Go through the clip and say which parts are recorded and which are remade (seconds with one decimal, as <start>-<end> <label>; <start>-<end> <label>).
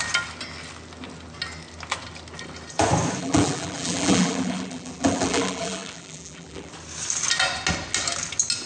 0.0-3.2 recorded; 3.2-6.7 remade; 6.7-8.7 recorded